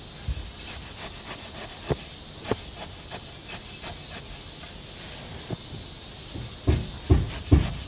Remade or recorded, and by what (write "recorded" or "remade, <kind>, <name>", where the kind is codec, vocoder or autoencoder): recorded